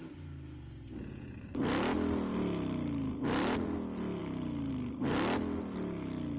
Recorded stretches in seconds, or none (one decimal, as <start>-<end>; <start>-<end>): 0.0-6.4